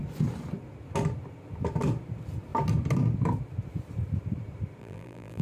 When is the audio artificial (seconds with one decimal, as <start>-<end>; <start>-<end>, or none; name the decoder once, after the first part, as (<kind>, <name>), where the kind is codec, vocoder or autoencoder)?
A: 4.8-5.4 (vocoder, BigVGAN v2)